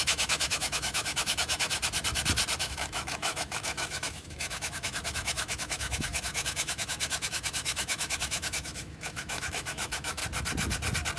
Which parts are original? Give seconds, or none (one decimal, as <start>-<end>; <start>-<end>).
1.8-2.6; 10.2-11.2